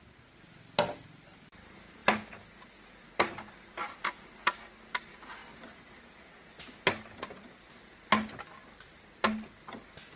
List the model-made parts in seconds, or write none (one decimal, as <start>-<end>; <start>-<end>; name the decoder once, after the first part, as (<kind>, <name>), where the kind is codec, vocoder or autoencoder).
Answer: none